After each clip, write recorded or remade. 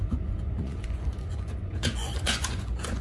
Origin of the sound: remade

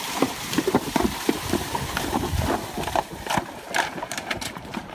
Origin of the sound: remade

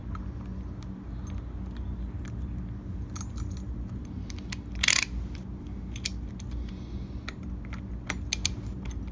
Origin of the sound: recorded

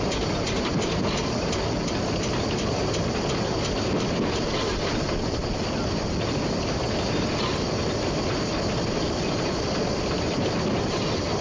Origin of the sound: recorded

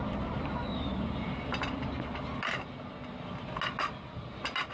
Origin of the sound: recorded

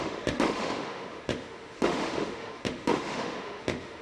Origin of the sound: remade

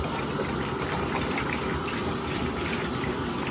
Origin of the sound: recorded